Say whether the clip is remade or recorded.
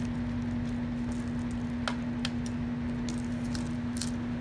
recorded